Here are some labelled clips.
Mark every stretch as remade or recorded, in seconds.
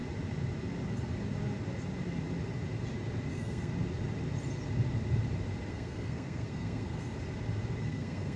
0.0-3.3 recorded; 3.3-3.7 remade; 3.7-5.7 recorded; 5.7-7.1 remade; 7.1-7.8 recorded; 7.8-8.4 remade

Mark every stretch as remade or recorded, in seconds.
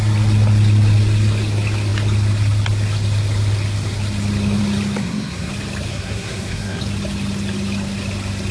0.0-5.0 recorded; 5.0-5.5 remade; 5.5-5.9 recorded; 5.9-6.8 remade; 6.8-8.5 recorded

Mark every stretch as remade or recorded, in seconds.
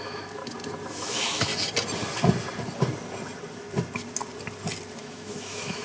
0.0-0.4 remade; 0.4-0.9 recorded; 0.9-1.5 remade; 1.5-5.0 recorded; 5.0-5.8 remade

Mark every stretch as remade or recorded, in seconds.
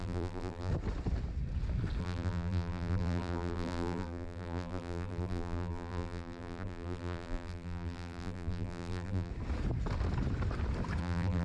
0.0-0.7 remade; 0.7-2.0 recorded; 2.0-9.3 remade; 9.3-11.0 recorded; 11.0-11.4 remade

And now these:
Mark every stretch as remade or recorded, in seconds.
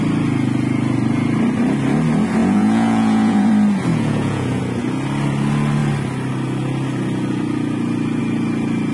0.0-2.4 recorded; 2.4-3.5 remade; 3.5-3.9 recorded; 3.9-4.6 remade; 4.6-8.9 recorded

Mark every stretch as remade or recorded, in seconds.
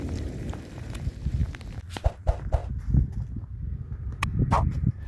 0.0-1.4 remade; 1.4-2.1 recorded; 2.1-2.6 remade; 2.6-4.6 recorded; 4.6-5.1 remade